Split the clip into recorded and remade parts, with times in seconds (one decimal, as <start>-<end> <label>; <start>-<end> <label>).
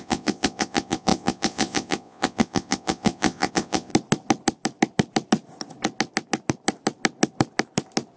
0.0-3.9 remade; 3.9-8.2 recorded